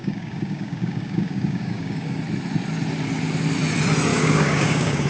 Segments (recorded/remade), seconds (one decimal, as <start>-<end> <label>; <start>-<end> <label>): 0.0-2.2 remade; 2.2-4.1 recorded; 4.1-5.1 remade